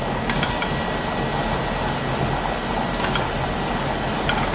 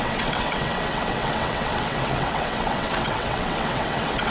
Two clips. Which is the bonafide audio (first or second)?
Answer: first